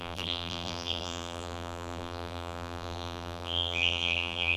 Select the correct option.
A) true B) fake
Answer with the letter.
B